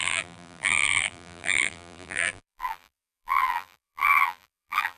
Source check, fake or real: fake